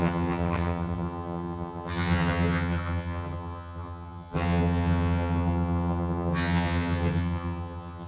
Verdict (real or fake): fake